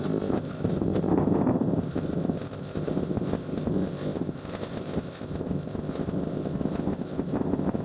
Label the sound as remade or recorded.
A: remade